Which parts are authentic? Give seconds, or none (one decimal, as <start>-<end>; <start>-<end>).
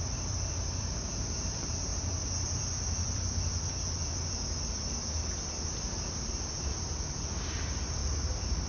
1.9-5.8; 8.0-8.7